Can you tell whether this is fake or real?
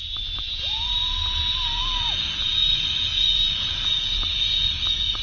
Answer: fake